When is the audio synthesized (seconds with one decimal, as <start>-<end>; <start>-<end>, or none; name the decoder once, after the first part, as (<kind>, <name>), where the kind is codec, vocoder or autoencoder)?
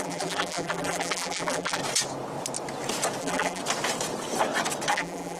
0.0-1.8 (vocoder, BigVGAN v2); 3.2-3.6; 4.9-5.4